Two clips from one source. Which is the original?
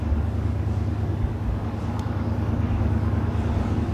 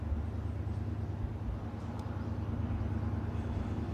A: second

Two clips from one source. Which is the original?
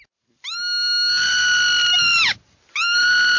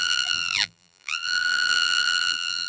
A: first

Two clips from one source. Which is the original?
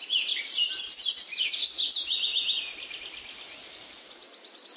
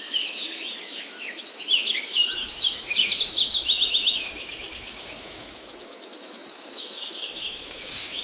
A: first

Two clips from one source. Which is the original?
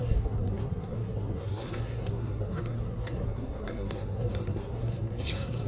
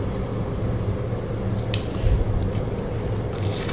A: second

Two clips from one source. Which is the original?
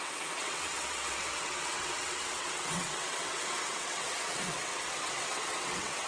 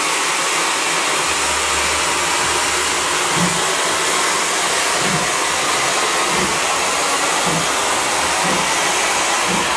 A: second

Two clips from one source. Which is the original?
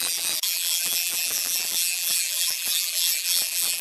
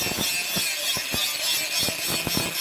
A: second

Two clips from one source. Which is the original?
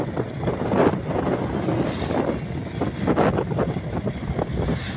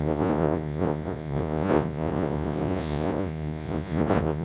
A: first